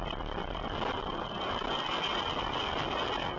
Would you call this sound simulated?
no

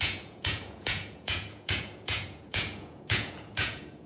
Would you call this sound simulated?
yes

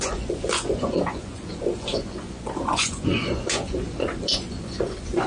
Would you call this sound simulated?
yes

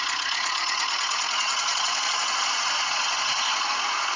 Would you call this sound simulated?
yes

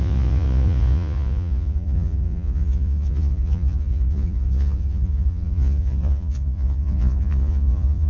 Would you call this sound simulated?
yes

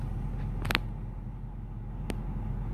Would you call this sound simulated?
no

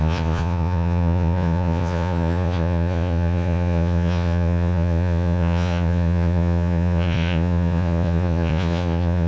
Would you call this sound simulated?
yes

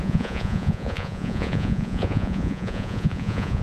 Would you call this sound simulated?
yes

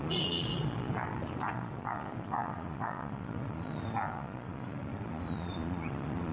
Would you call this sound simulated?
yes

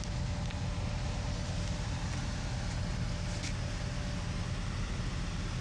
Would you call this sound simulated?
no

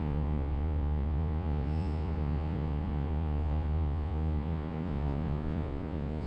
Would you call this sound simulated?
yes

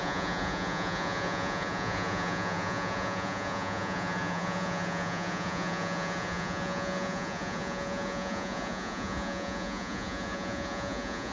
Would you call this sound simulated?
yes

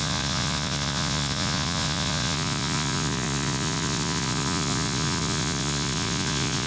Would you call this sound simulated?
yes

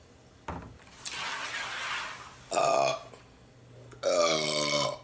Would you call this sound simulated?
no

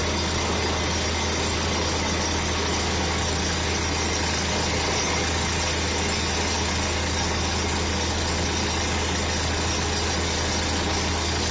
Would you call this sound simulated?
no